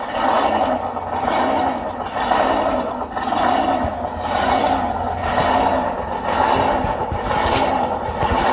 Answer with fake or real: real